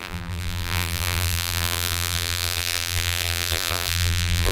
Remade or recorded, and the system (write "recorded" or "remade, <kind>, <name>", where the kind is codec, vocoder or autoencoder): remade, vocoder, BigVGAN v2